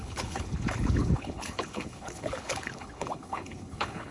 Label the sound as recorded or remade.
remade